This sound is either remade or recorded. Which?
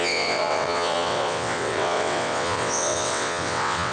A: remade